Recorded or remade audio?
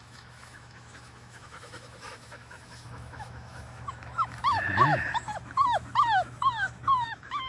remade